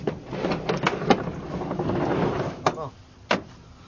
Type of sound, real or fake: real